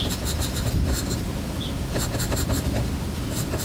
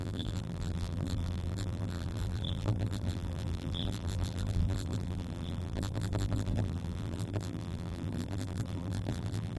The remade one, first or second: second